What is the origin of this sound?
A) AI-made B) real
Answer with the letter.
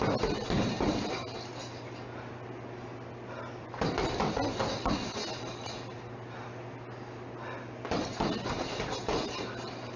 B